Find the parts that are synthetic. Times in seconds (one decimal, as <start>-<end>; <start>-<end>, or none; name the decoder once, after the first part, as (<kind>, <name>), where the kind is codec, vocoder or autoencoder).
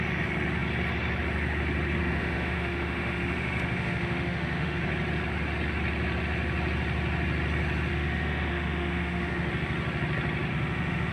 2.0-4.8 (autoencoder, DAC-VAE); 7.9-9.5; 10.5-11.1